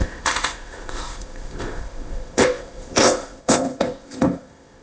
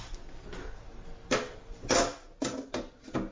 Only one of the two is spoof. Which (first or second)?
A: first